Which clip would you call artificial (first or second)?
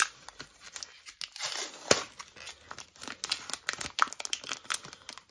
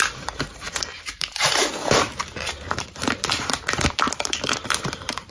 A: second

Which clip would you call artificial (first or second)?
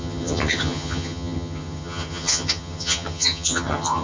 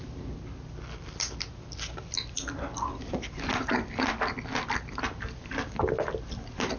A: first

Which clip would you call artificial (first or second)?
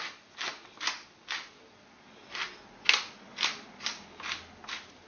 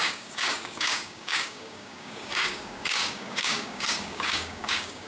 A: second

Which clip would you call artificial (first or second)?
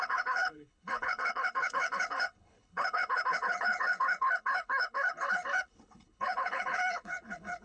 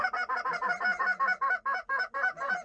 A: first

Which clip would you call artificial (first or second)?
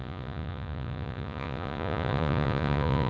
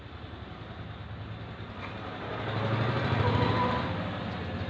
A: first